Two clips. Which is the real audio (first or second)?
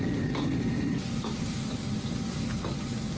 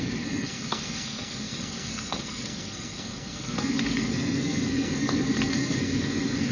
first